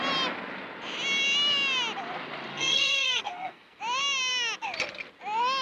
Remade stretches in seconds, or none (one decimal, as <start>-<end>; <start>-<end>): 2.5-3.8